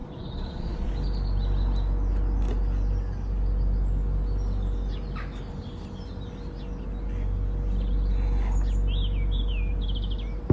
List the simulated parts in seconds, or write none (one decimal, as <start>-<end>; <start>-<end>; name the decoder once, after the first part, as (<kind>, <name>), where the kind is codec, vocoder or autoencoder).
0.0-0.9 (vocoder, Vocos)